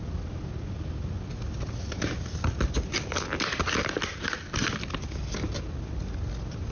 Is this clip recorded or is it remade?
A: recorded